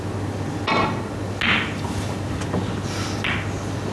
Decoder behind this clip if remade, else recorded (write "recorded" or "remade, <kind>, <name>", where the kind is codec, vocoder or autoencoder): recorded